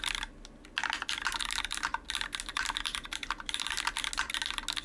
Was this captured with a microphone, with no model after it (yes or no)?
yes